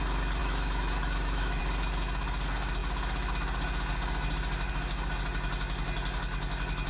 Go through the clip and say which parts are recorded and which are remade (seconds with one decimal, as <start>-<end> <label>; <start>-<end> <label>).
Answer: 0.0-0.4 recorded; 0.4-1.6 remade; 1.6-6.9 recorded